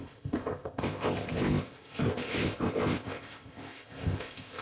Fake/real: fake